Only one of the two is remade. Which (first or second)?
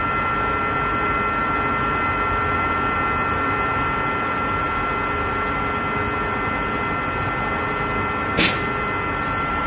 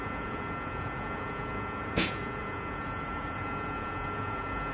second